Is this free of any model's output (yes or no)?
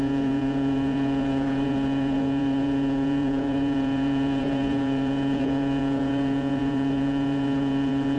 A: no